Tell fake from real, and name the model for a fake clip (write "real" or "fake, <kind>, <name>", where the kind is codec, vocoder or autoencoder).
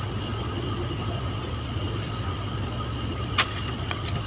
fake, vocoder, Vocos